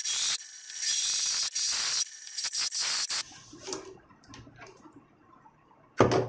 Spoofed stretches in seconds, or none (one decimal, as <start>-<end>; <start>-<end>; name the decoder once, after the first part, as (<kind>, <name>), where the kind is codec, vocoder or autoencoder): none